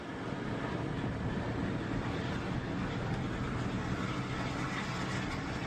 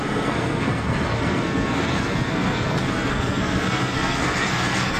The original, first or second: first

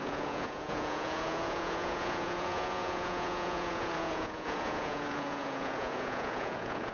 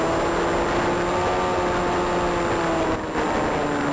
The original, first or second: second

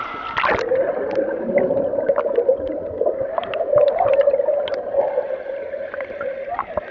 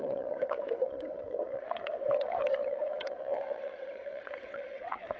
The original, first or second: first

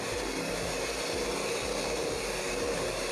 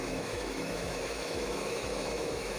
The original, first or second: first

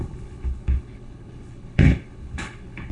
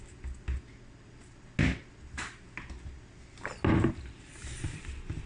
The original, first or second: second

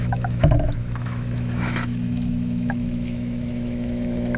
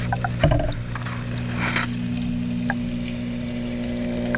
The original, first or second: second